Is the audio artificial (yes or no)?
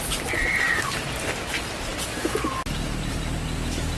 no